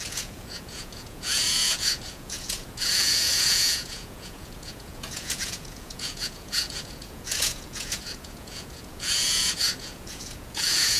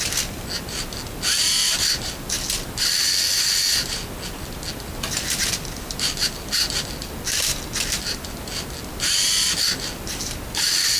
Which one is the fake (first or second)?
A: first